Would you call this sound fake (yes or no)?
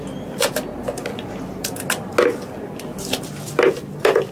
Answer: no